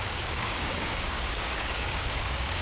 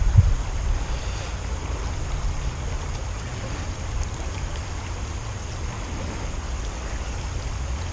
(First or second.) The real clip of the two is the second